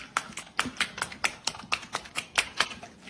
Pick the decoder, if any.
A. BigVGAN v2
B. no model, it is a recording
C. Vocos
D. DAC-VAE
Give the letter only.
B